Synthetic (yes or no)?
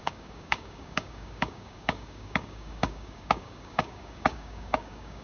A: yes